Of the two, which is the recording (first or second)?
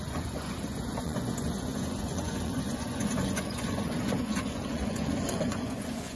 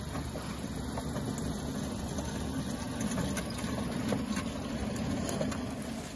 second